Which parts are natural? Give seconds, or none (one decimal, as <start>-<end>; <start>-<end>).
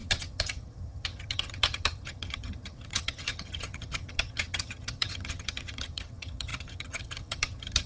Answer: none